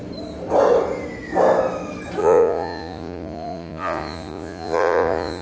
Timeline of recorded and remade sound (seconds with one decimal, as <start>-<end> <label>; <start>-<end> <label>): 0.0-2.2 recorded; 2.2-5.4 remade